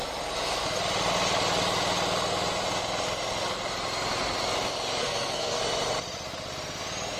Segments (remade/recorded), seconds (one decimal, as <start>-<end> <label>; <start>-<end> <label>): 0.0-5.0 recorded; 5.0-5.6 remade; 5.6-7.2 recorded